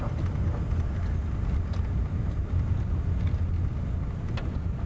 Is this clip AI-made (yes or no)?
no